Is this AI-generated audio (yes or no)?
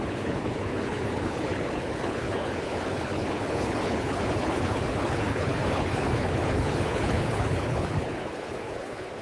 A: yes